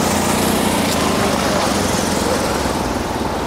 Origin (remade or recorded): recorded